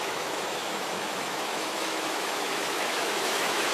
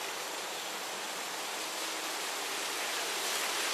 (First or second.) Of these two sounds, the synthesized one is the first